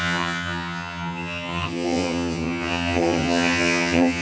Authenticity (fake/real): fake